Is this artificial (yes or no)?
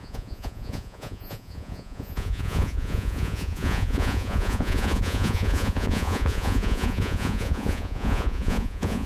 yes